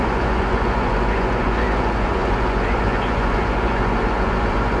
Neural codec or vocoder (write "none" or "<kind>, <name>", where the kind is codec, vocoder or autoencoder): vocoder, Vocos